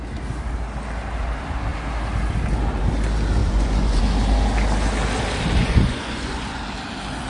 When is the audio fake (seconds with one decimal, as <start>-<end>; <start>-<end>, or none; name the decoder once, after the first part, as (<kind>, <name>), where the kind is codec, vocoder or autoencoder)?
3.4-4.0 (vocoder, Vocos); 5.6-6.6